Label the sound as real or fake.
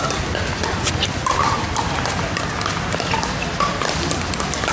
real